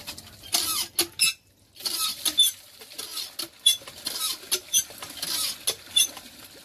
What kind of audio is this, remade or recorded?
recorded